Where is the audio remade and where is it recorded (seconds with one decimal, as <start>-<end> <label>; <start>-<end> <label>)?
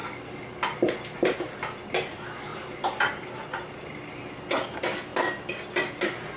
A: 0.0-2.5 recorded; 2.5-4.0 remade; 4.0-6.4 recorded